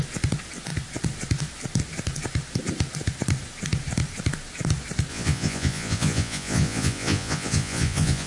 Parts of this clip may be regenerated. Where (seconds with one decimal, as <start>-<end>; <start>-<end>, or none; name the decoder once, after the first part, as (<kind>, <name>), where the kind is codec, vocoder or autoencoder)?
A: 5.1-8.3 (vocoder, Vocos)